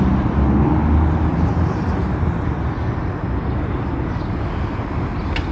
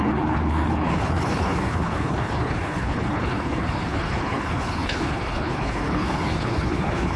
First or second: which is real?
first